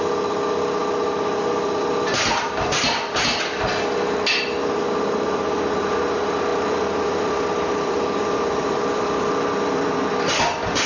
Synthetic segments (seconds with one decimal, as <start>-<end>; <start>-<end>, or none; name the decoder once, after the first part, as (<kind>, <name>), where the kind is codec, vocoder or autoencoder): 6.5-9.3 (vocoder, BigVGAN v2)